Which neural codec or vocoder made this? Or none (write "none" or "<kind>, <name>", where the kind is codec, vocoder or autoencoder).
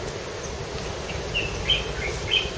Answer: none